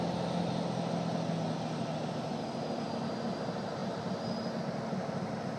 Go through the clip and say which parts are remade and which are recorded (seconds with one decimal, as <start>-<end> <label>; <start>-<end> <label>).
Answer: 0.0-5.6 recorded